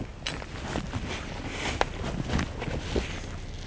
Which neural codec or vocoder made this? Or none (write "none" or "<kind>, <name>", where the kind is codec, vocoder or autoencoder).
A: none